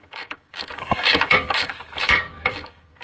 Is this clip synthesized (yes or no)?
yes